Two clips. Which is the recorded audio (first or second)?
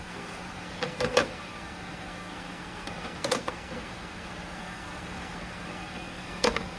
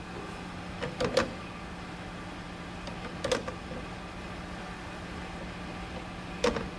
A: second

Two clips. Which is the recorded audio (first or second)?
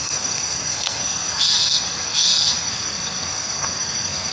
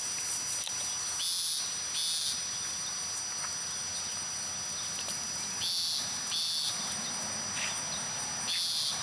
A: second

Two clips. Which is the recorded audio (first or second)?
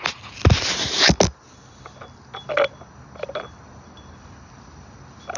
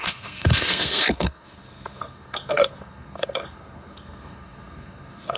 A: first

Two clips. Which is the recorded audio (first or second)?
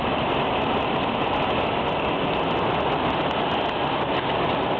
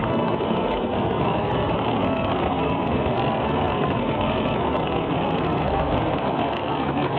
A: first